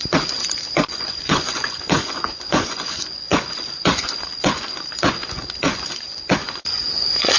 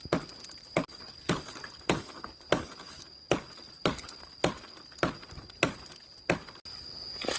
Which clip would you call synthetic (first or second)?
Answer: first